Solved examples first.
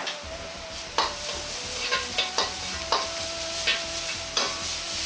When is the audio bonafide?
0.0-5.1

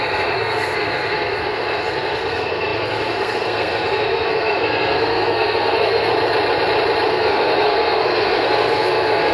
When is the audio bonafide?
6.1-7.1

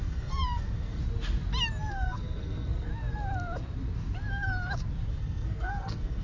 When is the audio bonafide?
1.0-1.9; 2.9-5.1